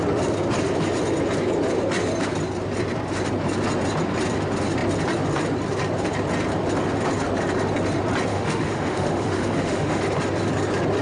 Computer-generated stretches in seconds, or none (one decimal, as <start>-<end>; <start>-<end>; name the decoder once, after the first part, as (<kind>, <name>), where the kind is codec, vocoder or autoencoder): 8.3-10.0 (autoencoder, DAC-VAE)